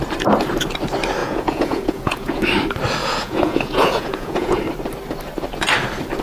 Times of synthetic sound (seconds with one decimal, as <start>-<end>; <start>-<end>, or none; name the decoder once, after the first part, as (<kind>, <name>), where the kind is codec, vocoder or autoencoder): 1.2-2.4 (vocoder, Vocos); 3.0-4.6